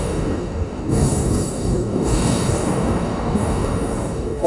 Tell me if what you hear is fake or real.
fake